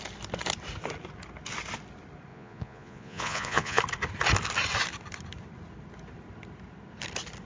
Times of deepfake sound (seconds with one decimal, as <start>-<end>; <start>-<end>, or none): 2.3-3.8